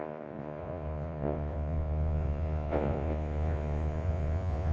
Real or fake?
fake